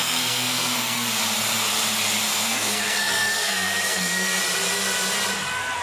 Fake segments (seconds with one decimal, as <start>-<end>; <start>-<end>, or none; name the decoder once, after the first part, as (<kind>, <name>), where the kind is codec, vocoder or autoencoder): 0.0-1.2 (codec, SNAC); 2.3-4.4